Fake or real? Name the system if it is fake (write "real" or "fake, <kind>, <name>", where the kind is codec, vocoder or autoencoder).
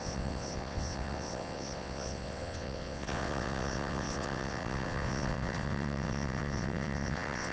fake, vocoder, WaveNeXt